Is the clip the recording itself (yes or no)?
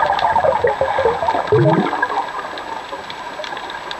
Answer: yes